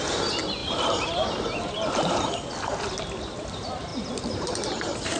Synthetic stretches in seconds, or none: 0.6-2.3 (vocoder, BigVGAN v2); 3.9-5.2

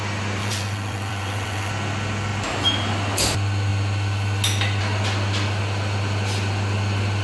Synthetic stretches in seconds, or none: 0.4-1.7 (vocoder, WaveNeXt)

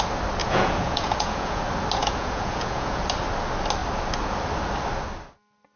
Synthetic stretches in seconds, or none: 0.4-1.6 (vocoder, Vocos); 2.0-3.0

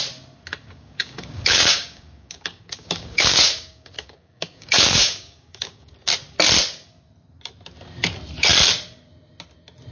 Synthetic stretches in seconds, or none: 0.6-5.9 (codec, DAC)